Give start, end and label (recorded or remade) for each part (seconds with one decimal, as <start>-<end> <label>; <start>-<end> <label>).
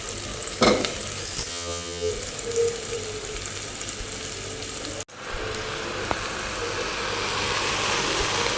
0.0-1.5 recorded; 1.5-2.1 remade; 2.1-8.6 recorded